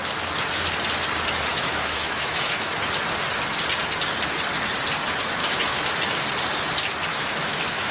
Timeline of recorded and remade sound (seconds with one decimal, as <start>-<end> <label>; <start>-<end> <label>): 0.0-1.5 recorded; 1.5-2.7 remade; 2.7-5.4 recorded; 5.4-5.9 remade; 5.9-7.1 recorded; 7.1-7.9 remade